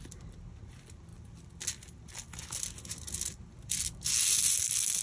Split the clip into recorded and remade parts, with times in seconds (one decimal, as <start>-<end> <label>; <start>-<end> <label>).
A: 0.0-5.0 recorded